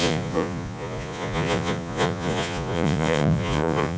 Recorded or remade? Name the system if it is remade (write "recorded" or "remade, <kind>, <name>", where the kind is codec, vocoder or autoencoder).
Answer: remade, vocoder, Vocos